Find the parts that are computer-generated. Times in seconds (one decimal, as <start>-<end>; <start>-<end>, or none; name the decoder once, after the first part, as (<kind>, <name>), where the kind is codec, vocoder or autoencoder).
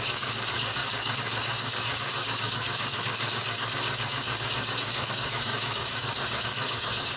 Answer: 0.0-7.2 (codec, DAC)